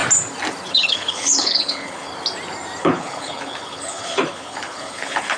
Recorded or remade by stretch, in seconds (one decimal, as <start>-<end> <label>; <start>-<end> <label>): 0.0-0.7 recorded; 0.7-2.1 remade; 2.1-2.8 recorded; 2.8-5.4 remade